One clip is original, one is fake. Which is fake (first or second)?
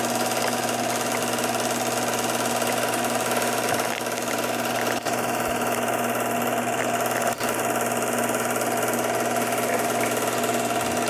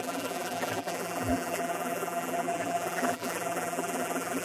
second